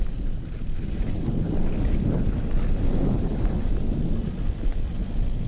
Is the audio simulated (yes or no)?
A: no